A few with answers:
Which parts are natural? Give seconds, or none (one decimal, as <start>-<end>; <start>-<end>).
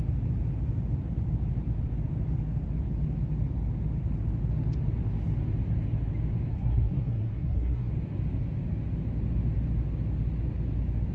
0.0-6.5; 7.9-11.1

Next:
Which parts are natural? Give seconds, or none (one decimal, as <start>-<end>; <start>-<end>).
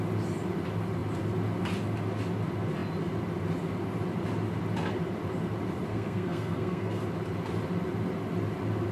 0.0-5.9; 7.0-8.9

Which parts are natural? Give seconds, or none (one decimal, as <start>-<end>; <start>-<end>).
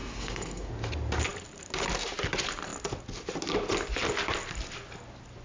0.7-5.4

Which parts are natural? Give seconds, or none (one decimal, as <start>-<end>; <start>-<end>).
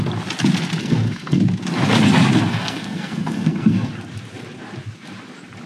0.0-0.8; 1.4-2.5; 3.9-5.7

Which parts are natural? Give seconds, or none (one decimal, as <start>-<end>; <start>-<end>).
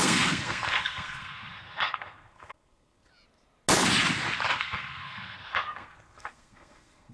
3.1-4.5